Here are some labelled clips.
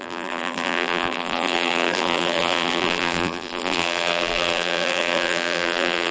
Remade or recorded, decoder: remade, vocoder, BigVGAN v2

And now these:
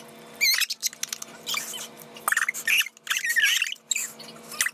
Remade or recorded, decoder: recorded